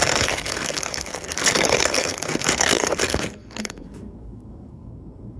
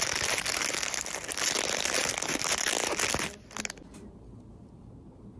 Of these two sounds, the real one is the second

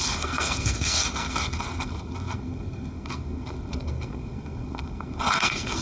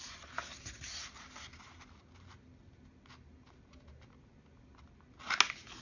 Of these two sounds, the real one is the second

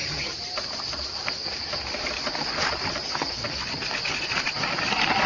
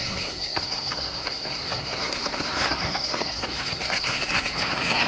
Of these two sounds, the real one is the first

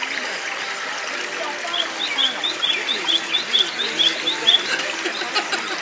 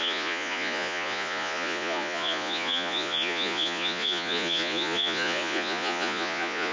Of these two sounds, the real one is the first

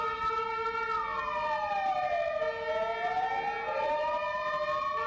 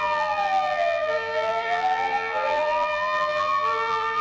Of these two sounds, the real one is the first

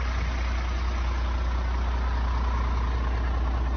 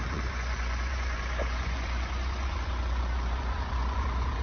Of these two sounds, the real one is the first